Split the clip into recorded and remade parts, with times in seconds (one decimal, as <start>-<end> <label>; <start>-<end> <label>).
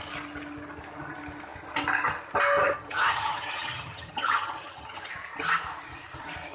0.0-2.6 recorded; 2.6-5.1 remade; 5.1-6.5 recorded